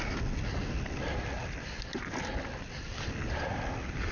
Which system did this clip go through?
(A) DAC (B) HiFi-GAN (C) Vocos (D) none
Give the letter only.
D